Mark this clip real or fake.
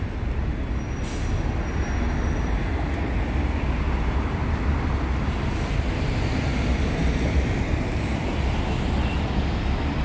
real